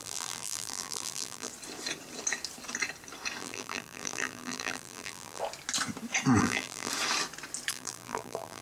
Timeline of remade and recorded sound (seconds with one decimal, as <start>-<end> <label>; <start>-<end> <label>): 0.0-1.5 remade; 1.5-3.4 recorded; 3.4-5.4 remade; 5.4-6.4 recorded; 6.4-6.9 remade; 6.9-7.7 recorded; 7.7-8.6 remade